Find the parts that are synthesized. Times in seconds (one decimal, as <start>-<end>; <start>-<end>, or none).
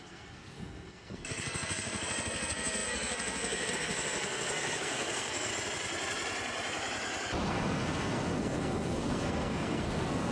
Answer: 0.0-5.5; 7.5-10.3